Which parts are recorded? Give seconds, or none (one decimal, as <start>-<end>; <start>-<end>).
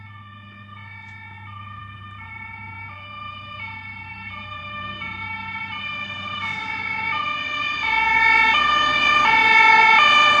0.0-1.8; 6.4-10.4